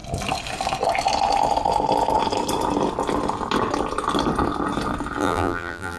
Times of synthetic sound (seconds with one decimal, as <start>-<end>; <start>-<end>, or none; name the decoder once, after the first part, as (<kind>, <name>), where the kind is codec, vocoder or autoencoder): 5.2-6.0 (vocoder, BigVGAN v2)